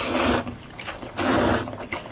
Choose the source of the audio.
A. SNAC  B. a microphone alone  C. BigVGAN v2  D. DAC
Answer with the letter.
B